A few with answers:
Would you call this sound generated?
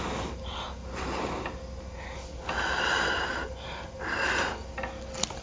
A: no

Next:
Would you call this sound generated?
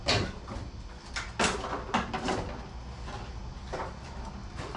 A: no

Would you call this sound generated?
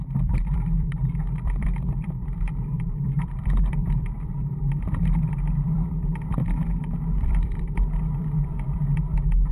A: yes